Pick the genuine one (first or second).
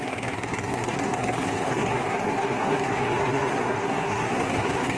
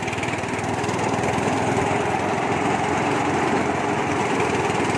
second